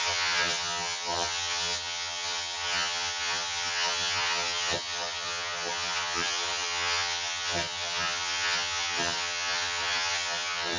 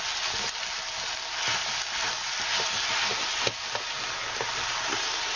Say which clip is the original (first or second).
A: second